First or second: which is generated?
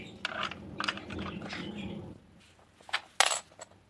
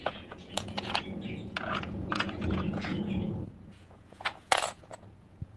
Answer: second